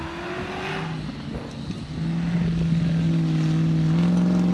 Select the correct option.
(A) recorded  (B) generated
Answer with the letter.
A